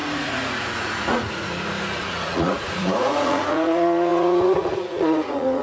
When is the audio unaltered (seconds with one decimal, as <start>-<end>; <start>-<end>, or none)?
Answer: none